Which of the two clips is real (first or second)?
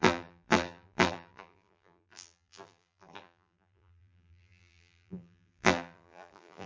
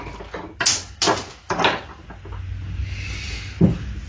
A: second